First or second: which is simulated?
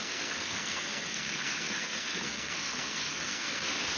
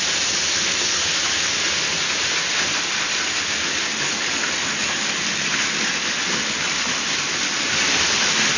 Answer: first